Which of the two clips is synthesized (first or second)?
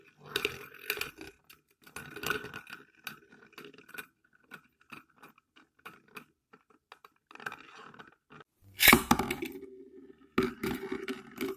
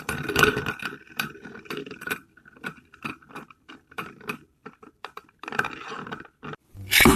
second